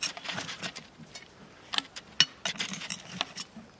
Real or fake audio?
real